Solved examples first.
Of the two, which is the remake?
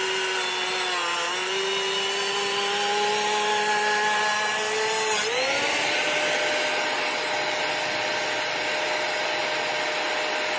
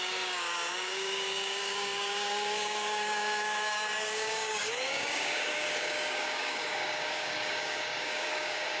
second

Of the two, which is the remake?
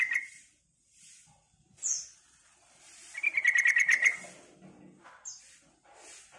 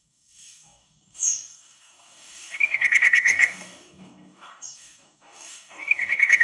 second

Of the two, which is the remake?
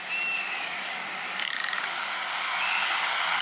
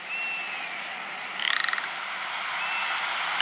first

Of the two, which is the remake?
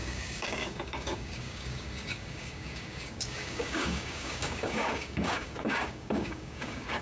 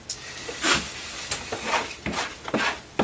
first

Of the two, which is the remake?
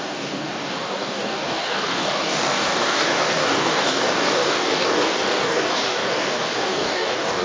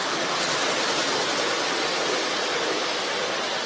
first